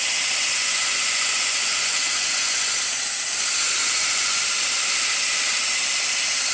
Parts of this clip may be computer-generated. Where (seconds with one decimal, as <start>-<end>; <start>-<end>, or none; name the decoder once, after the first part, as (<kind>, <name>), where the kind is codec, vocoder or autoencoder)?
0.6-2.8 (vocoder, Vocos); 3.8-4.4